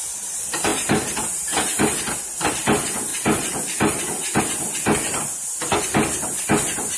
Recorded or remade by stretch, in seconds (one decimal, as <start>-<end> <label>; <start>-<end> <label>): 0.0-7.0 recorded